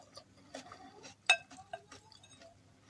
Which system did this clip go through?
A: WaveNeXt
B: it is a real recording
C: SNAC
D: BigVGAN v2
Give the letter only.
B